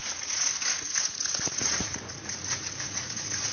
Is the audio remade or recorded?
remade